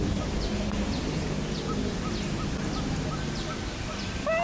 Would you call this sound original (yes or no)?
yes